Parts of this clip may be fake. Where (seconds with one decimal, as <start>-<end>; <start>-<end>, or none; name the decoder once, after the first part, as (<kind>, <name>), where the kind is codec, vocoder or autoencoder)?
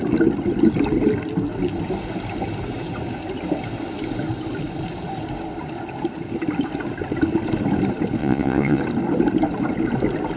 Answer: 8.2-8.8 (vocoder, WaveNeXt)